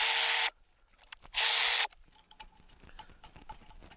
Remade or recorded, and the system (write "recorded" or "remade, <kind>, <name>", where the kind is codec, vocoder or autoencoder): recorded